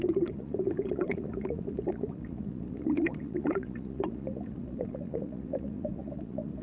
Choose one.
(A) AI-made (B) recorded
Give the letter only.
A